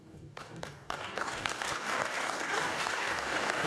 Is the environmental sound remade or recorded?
remade